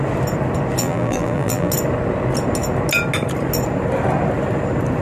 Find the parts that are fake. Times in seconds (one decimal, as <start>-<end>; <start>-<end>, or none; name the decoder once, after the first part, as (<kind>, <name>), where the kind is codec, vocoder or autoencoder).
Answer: 0.8-1.7 (vocoder, BigVGAN v2)